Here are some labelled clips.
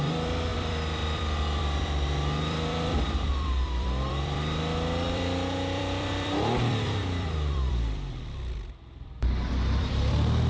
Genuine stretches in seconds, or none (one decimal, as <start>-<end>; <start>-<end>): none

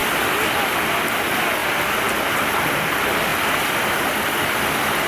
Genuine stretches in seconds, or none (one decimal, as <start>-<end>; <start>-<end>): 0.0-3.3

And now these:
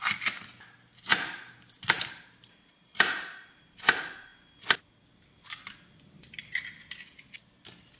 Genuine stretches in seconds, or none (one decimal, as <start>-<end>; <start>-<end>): 0.0-1.1; 3.7-8.0

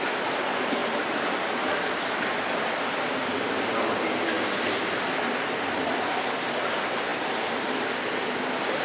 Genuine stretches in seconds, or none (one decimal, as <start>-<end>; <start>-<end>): 0.0-0.8; 3.7-7.1